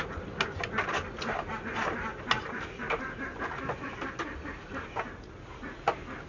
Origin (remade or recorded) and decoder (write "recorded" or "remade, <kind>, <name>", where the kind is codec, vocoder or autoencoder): recorded